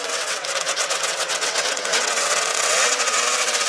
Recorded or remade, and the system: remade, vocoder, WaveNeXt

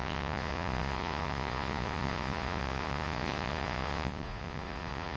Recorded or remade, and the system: remade, vocoder, Vocos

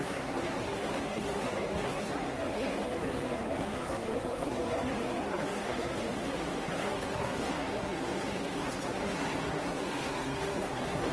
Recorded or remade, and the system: remade, codec, SNAC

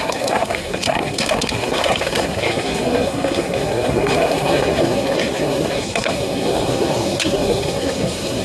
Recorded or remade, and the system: remade, codec, SNAC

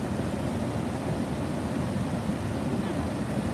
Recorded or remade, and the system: recorded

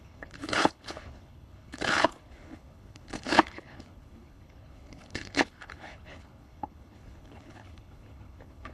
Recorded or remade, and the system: remade, codec, HILCodec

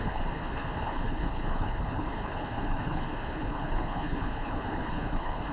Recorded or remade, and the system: remade, codec, HILCodec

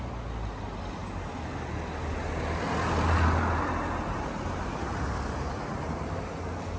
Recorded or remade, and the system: recorded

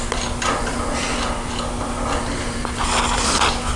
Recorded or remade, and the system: recorded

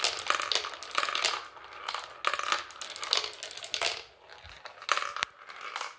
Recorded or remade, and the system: recorded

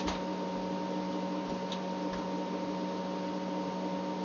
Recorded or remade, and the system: recorded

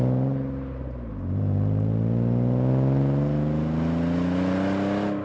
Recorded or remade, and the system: recorded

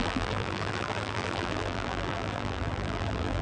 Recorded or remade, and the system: remade, vocoder, BigVGAN v2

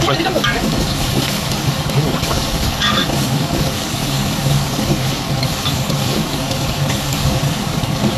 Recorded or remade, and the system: remade, codec, DAC